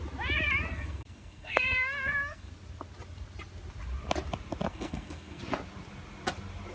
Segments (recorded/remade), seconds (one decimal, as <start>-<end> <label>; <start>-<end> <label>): 0.0-0.7 recorded; 0.7-2.5 remade; 2.5-4.7 recorded; 4.7-5.4 remade; 5.4-6.7 recorded